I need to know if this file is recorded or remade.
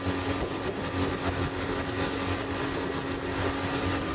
recorded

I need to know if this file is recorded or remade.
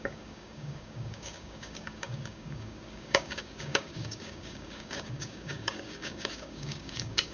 remade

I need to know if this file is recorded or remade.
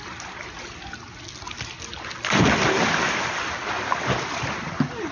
recorded